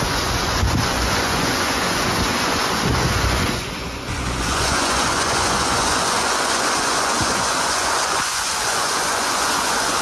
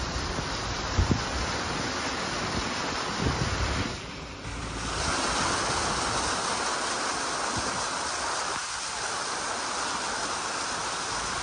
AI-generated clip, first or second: first